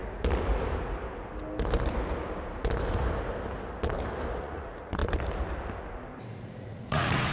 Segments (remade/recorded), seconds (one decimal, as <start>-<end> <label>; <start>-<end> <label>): 0.0-4.4 recorded; 4.4-5.0 remade; 5.0-6.3 recorded; 6.3-7.3 remade